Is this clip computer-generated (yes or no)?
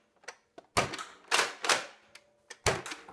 no